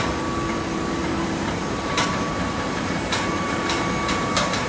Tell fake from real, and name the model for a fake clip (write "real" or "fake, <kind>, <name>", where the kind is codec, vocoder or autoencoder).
fake, vocoder, BigVGAN v2